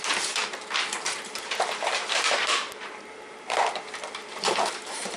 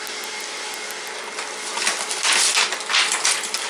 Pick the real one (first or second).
second